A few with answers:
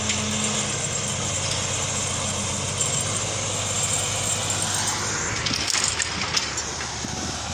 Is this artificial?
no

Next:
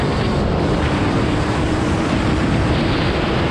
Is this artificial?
yes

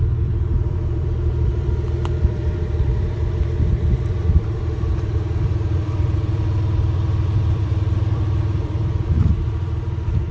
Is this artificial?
yes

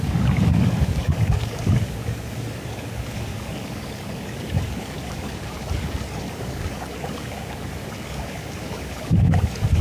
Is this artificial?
yes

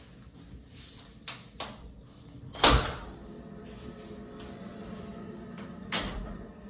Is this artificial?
no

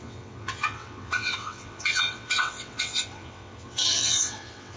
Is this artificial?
yes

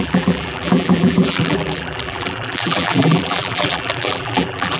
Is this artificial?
yes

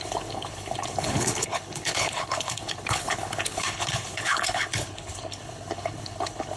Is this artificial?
yes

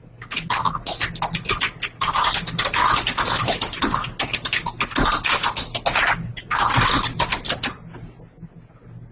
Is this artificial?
no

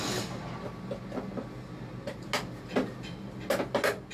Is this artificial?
no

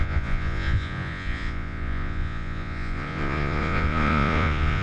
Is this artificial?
yes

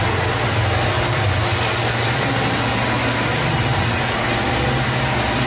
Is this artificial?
no